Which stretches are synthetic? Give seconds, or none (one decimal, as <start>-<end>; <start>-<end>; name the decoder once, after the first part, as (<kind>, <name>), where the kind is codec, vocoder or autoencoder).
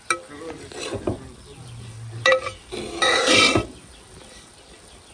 none